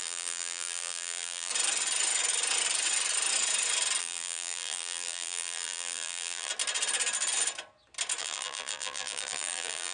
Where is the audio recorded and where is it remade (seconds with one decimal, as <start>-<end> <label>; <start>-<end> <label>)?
0.0-1.5 remade; 1.5-4.0 recorded; 4.0-6.5 remade; 6.5-8.2 recorded; 8.2-9.9 remade